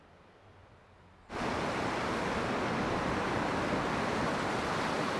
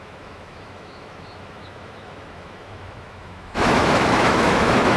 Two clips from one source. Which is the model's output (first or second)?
second